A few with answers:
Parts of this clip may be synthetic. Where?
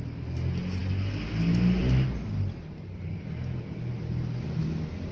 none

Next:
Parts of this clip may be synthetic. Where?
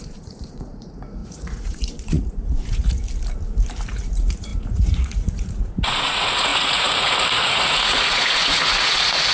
0.0-3.0 (vocoder, Vocos); 3.9-9.3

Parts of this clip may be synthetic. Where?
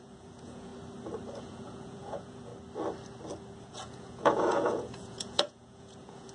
0.0-0.7 (vocoder, Vocos); 1.4-2.5; 3.6-6.3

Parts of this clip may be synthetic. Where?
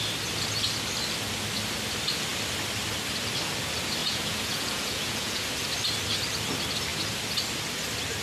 4.0-5.5 (vocoder, Vocos)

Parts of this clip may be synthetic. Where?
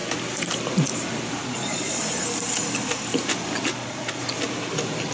1.4-2.0 (vocoder, Vocos); 3.7-4.2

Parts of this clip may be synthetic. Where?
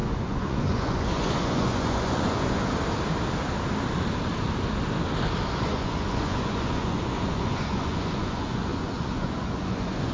0.0-2.6 (vocoder, Vocos); 5.5-10.1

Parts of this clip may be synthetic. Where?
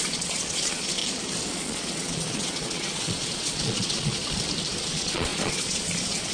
0.0-1.0 (vocoder, Vocos); 1.5-4.2; 4.8-6.3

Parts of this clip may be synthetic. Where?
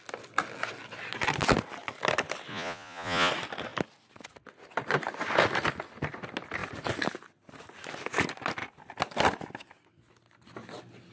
2.5-3.3 (vocoder, Vocos)